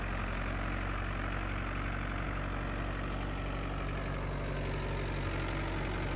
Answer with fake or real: real